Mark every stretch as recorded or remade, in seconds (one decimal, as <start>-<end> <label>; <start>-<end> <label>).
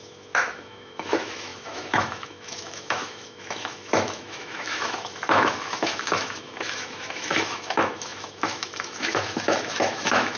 0.0-10.4 remade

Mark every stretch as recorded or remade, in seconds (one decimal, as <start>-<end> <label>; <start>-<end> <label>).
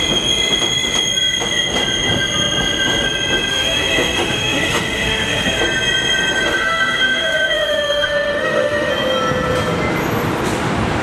0.0-3.5 recorded; 3.5-5.6 remade; 5.6-6.5 recorded; 6.5-8.9 remade; 8.9-11.0 recorded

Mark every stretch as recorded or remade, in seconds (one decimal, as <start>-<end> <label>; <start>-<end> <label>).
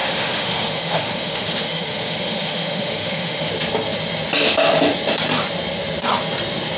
0.0-3.5 remade; 3.5-6.8 recorded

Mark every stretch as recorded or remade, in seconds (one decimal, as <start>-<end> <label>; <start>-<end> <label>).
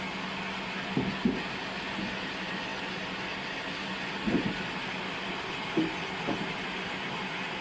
0.0-7.6 recorded